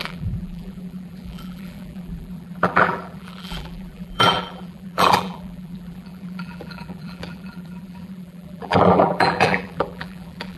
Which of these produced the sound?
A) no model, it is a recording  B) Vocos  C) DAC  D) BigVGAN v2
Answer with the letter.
D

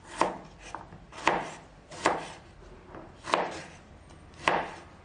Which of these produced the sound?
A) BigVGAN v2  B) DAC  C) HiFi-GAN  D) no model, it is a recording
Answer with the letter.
D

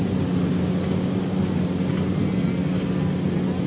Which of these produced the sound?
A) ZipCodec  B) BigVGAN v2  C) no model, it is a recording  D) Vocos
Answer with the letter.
C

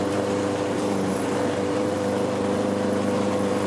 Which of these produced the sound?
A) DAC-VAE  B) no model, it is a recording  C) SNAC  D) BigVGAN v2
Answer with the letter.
D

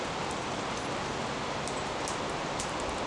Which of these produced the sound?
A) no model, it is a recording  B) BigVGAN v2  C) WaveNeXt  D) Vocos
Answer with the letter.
A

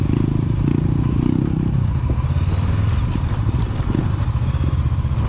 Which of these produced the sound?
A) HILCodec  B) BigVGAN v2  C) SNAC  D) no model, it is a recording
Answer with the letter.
D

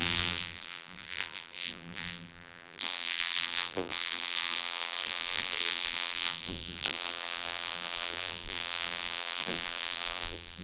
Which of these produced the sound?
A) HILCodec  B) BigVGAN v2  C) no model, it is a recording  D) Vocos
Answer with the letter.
B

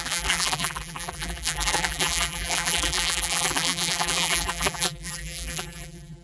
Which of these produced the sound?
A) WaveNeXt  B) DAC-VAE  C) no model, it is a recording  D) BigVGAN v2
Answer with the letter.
D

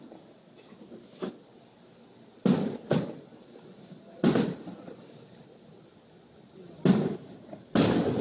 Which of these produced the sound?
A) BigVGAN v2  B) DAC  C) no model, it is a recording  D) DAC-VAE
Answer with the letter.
C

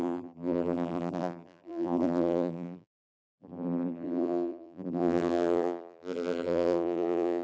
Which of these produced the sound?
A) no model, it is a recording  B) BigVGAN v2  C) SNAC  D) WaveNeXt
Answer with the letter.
B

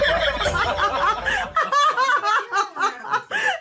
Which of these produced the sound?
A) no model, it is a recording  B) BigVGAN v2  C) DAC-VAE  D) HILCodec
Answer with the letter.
B